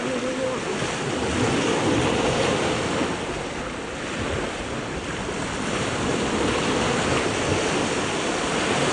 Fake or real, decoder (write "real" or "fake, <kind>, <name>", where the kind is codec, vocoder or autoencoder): real